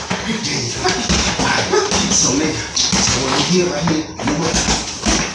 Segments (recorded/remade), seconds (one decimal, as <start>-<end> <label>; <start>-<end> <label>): 0.0-0.4 remade; 0.4-3.1 recorded; 3.1-3.6 remade; 3.6-4.3 recorded; 4.3-5.3 remade